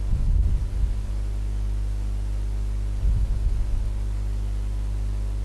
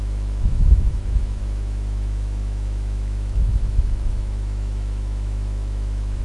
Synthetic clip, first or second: second